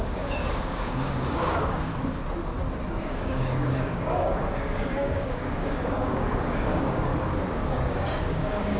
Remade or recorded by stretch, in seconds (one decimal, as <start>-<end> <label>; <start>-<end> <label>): 0.0-1.9 remade; 1.9-3.0 recorded; 3.0-7.1 remade; 7.1-7.7 recorded; 7.7-8.8 remade